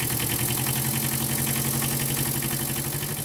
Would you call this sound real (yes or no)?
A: yes